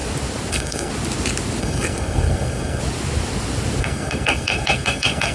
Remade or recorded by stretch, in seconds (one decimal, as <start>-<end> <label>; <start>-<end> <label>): 0.0-0.5 recorded; 0.5-0.9 remade; 0.9-1.6 recorded; 1.6-2.8 remade; 2.8-3.8 recorded; 3.8-5.3 remade